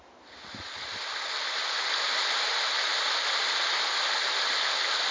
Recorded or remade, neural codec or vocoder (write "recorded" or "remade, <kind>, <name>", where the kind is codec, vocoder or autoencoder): recorded